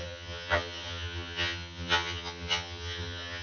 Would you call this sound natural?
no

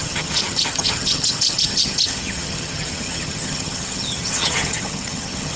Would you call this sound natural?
no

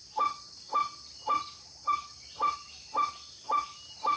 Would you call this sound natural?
yes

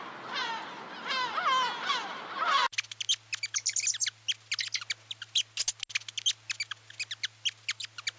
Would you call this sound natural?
yes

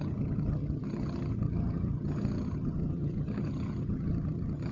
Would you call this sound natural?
no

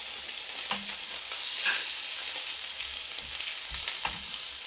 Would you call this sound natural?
yes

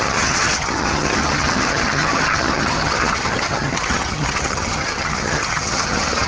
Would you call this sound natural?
no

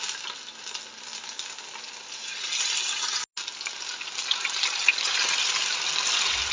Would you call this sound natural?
yes